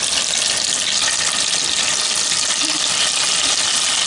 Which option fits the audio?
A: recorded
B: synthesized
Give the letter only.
A